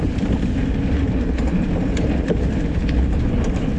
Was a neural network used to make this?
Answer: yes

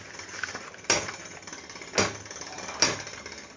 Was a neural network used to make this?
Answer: no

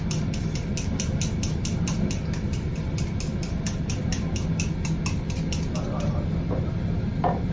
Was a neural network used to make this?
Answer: no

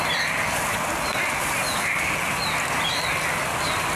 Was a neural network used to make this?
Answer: no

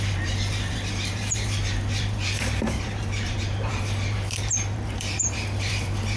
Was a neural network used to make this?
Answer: yes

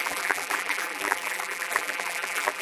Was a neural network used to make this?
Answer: yes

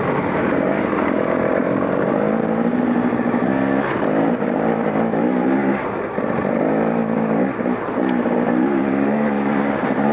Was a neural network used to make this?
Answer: yes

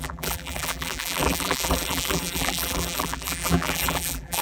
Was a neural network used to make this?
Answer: yes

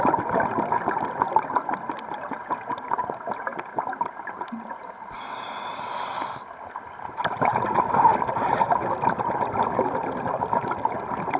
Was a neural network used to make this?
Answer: no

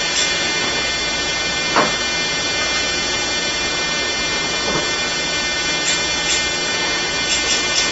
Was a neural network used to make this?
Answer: no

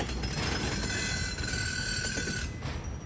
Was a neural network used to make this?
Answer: no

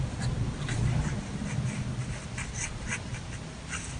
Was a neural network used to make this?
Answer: no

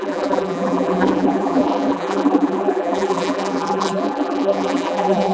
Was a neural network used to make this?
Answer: yes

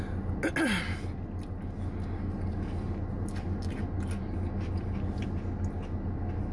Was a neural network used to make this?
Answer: no